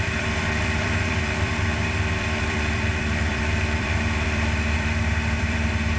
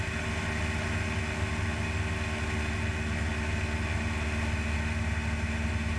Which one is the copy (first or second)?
first